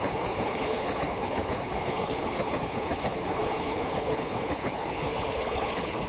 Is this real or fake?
fake